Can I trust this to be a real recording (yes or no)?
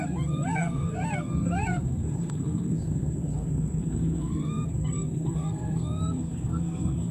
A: no